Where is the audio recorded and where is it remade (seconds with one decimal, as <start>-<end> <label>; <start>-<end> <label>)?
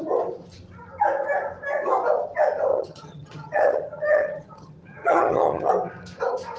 0.0-2.7 recorded; 2.7-5.7 remade; 5.7-6.6 recorded